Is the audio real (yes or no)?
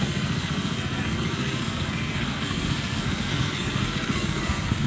no